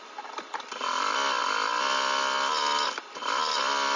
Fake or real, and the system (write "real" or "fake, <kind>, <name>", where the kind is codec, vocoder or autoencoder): real